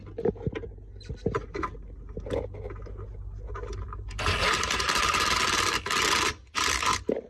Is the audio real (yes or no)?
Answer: yes